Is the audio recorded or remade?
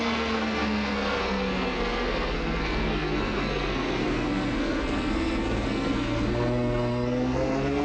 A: remade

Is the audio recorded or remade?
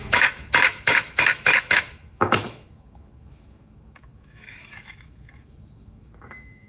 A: remade